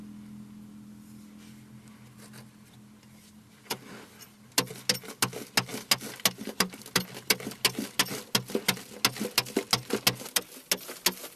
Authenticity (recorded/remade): recorded